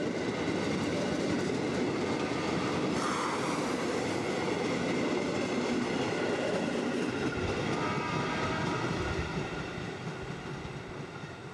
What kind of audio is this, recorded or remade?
recorded